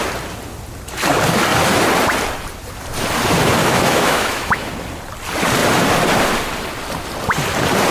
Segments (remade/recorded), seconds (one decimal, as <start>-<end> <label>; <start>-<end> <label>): 0.0-3.6 recorded; 3.6-4.7 remade; 4.7-7.9 recorded